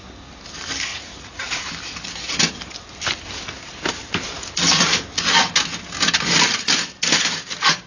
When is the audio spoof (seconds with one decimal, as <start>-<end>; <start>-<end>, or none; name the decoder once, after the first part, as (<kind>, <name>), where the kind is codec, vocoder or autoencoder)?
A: 0.9-1.7 (vocoder, Vocos)